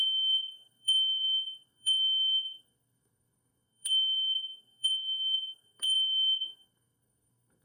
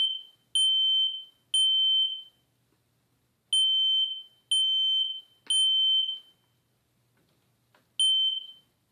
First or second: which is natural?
second